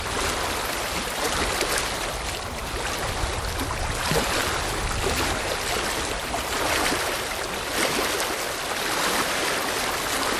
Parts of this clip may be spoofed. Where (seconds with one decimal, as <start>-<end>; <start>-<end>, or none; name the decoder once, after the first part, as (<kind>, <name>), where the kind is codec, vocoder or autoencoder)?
none